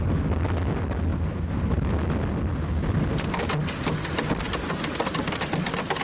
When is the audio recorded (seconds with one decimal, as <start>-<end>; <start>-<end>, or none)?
0.0-6.0

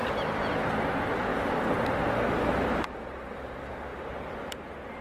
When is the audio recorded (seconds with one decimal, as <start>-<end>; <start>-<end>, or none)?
1.3-2.5